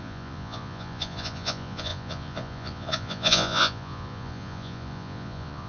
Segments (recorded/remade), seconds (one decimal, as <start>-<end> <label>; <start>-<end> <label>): 0.0-5.7 remade